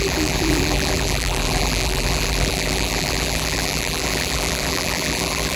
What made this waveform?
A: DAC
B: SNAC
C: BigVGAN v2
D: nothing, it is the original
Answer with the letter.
C